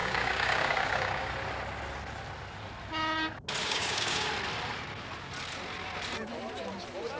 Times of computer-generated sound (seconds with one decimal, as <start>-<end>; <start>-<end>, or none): 0.0-1.3; 3.6-4.3